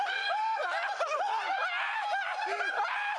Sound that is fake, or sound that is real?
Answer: fake